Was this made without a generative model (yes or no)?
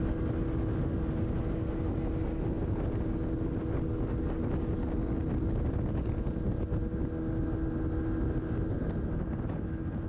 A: yes